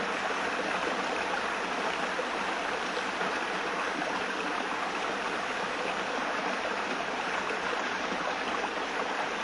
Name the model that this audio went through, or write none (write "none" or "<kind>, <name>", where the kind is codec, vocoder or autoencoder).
none